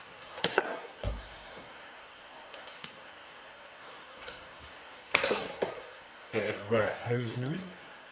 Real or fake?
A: fake